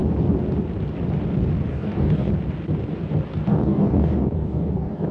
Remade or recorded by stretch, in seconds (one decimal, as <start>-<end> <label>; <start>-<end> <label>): 0.0-1.7 recorded; 1.7-2.3 remade; 2.3-3.5 recorded; 3.5-5.1 remade